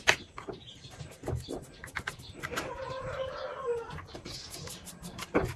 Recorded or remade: remade